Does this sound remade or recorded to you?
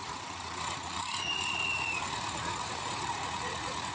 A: remade